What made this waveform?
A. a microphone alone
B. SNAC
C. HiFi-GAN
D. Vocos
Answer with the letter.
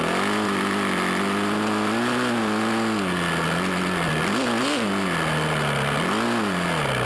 A